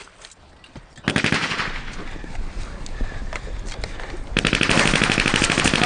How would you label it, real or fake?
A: real